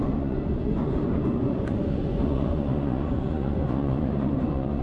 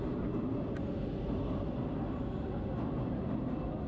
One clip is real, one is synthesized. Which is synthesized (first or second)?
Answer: first